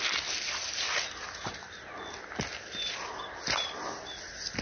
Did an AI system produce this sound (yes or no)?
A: no